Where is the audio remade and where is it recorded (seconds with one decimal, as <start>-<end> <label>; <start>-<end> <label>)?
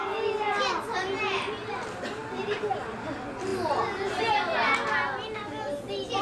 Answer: 0.0-6.2 recorded